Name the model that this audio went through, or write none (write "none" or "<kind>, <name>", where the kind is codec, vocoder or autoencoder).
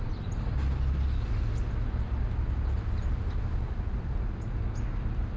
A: none